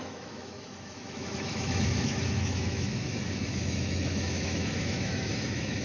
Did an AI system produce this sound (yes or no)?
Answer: yes